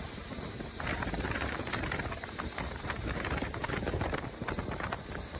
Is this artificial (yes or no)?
yes